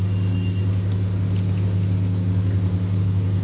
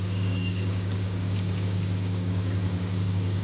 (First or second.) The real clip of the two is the first